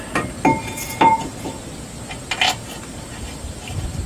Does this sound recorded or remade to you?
remade